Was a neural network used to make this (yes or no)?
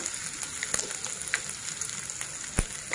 no